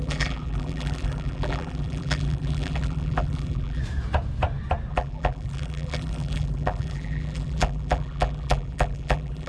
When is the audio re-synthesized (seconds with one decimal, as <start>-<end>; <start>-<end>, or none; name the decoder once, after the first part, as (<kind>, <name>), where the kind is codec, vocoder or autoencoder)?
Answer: 0.0-3.8 (vocoder, BigVGAN v2); 4.9-9.5